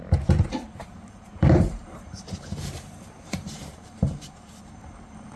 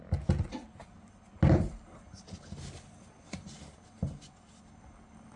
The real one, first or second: second